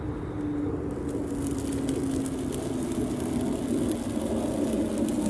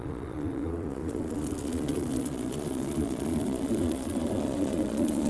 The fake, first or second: second